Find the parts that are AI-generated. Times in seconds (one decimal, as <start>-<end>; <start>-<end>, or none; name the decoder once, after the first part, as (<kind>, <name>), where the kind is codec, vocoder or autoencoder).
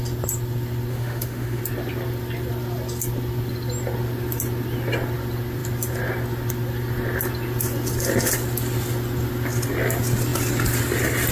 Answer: 0.9-1.6 (autoencoder, DAC-VAE)